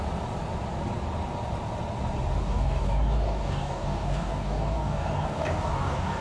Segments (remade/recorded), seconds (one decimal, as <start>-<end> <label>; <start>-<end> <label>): 0.0-2.4 recorded; 2.4-6.2 remade